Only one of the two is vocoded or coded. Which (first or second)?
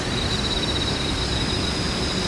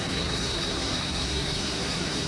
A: second